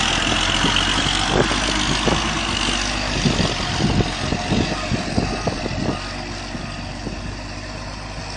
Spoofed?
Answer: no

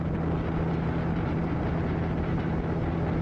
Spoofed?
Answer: no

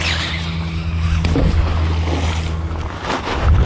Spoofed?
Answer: no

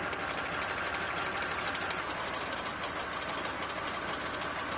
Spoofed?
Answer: no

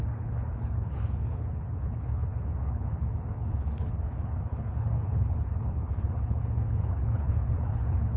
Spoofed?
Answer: yes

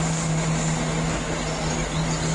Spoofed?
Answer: no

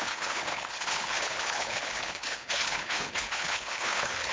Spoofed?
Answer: yes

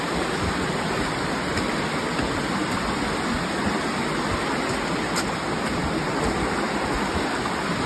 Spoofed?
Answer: no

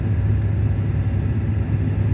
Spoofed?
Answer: no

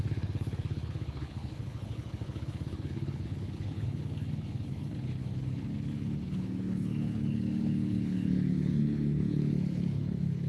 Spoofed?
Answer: yes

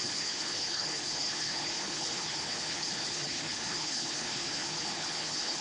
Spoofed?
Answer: yes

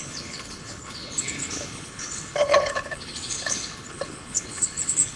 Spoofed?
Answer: yes